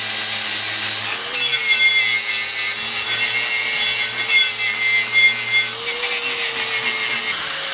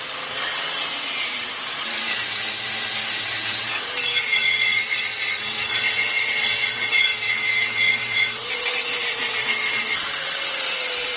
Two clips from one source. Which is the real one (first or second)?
first